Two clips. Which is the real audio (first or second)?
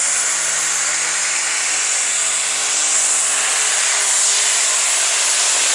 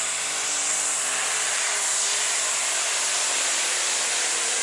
first